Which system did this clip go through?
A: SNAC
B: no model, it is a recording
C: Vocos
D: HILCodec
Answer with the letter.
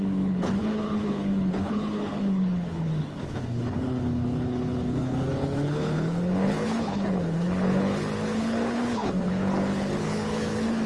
D